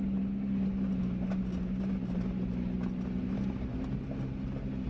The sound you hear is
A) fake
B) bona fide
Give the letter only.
B